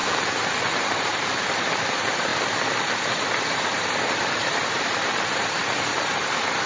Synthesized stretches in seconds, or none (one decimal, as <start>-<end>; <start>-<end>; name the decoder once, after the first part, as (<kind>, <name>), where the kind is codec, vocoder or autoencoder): 0.8-2.3 (vocoder, BigVGAN v2); 3.5-6.7